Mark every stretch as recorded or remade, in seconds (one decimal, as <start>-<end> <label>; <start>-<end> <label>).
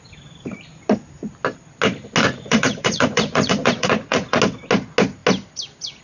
0.0-2.2 recorded; 2.2-4.4 remade; 4.4-6.0 recorded